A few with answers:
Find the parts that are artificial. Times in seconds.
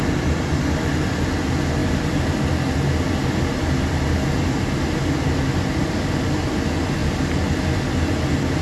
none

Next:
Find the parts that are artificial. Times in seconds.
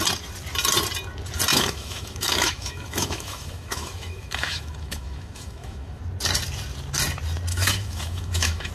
1.5-6.0 (autoencoder, DAC-VAE); 7.5-8.7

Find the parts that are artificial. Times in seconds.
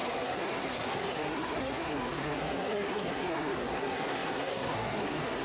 0.0-5.4 (codec, SNAC)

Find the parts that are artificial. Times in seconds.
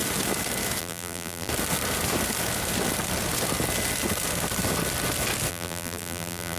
0.8-1.5 (vocoder, BigVGAN v2); 5.5-6.6